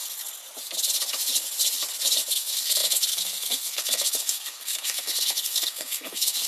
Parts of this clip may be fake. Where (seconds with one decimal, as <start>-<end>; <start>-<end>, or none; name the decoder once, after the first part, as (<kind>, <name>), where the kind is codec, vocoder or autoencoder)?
2.3-6.5 (codec, SNAC)